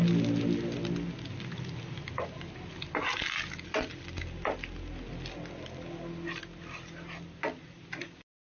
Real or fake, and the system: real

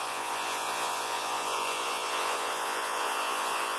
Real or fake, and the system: fake, vocoder, Vocos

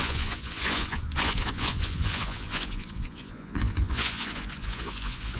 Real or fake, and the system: fake, vocoder, Vocos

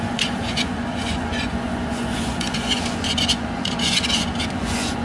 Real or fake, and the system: fake, vocoder, Vocos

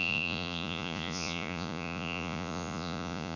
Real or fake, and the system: fake, vocoder, Vocos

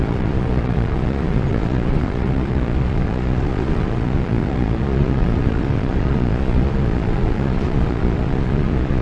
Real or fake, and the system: fake, vocoder, Vocos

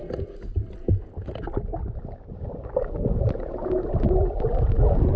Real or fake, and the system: real